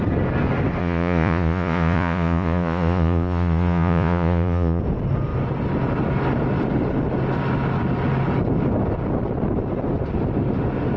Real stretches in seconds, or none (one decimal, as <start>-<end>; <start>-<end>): 0.0-0.8; 4.8-11.0